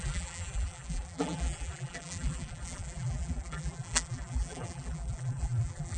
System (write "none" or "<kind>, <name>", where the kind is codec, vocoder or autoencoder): vocoder, BigVGAN v2